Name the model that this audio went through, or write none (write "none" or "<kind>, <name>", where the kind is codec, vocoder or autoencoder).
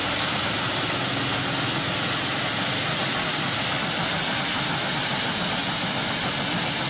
none